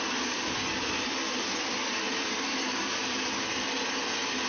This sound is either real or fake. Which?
fake